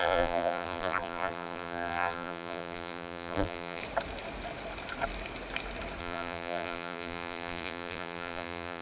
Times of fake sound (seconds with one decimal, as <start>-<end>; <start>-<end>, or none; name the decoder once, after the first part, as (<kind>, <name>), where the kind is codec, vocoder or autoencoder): 0.0-3.8 (vocoder, BigVGAN v2); 6.0-8.8